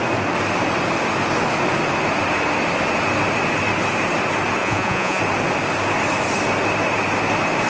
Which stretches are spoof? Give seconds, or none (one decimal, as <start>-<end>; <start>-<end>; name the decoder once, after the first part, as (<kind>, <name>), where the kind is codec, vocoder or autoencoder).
4.6-5.2 (vocoder, Vocos)